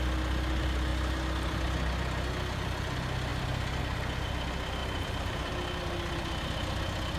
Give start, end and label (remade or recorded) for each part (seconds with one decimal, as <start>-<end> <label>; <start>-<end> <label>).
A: 0.0-4.8 recorded; 4.8-5.6 remade; 5.6-7.2 recorded